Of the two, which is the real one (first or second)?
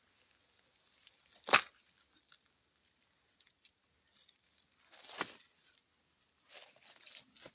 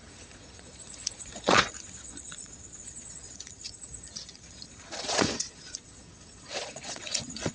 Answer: first